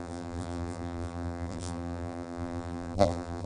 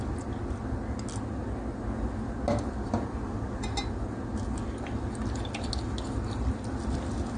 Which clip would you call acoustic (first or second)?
second